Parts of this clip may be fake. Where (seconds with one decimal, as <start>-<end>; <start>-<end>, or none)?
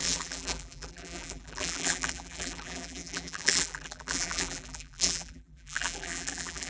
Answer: 0.0-6.7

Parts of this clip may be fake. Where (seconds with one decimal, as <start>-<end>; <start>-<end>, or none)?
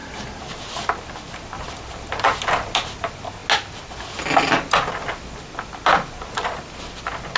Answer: none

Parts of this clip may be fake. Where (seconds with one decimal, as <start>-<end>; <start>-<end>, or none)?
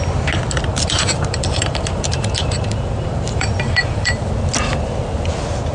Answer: 0.7-4.1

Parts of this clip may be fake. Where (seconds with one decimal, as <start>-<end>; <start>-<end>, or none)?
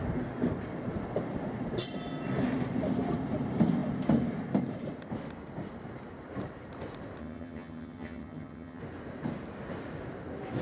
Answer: 7.2-8.8